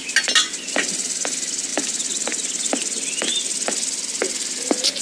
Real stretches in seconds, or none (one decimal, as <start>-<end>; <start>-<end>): 0.0-3.3; 4.6-5.0